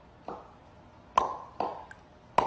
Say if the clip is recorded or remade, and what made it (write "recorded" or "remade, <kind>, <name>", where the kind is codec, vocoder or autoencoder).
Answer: recorded